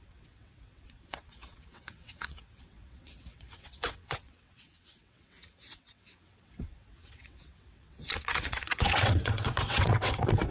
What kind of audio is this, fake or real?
fake